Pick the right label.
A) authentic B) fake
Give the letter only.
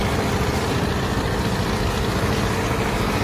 A